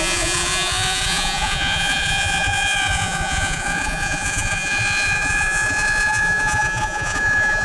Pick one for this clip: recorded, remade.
remade